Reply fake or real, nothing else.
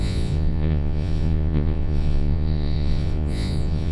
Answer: fake